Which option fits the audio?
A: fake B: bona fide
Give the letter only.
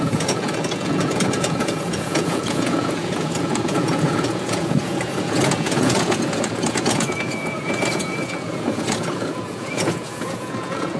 A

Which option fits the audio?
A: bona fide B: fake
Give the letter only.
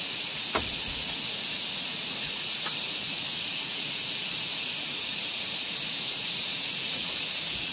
B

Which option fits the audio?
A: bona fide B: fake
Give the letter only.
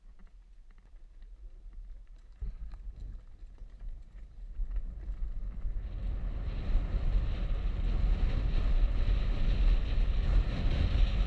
A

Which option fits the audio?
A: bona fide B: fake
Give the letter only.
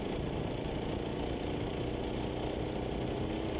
A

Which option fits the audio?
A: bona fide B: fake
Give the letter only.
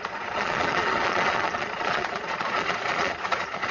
B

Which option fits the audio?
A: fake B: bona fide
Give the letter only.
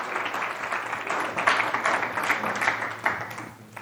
B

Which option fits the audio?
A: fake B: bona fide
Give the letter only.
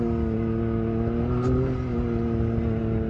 B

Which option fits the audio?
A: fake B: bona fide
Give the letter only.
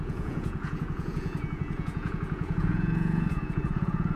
A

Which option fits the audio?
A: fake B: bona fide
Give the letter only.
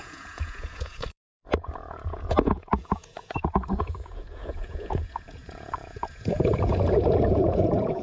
A